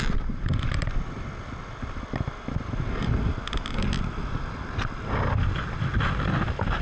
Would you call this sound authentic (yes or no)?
yes